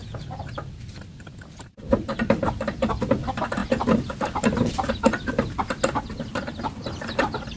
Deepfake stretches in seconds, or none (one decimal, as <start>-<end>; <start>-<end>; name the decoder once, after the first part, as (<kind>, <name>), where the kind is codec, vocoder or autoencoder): 0.0-7.6 (vocoder, BigVGAN v2)